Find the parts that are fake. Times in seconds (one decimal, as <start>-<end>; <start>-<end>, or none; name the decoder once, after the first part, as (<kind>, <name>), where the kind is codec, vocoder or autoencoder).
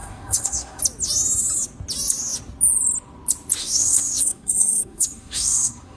0.0-0.8 (codec, SNAC); 3.6-6.0